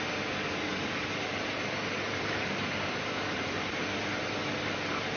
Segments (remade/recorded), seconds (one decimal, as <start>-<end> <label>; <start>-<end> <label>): 0.0-0.7 recorded; 0.7-3.8 remade; 3.8-5.2 recorded